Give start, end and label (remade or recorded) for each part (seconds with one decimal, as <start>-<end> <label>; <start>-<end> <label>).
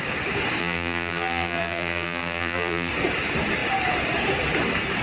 0.0-0.6 recorded; 0.6-2.9 remade; 2.9-5.0 recorded